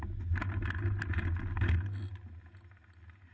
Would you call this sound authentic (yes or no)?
yes